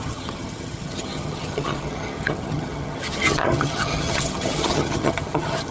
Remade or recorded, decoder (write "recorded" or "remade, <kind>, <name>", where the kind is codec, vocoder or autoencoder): remade, vocoder, HiFi-GAN